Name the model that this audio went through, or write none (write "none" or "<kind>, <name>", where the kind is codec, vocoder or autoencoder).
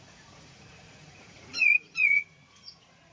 vocoder, Vocos